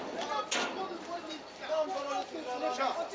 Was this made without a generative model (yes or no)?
yes